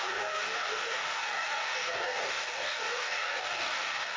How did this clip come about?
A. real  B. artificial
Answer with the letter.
B